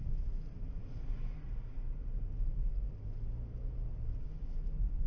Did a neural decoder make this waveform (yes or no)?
no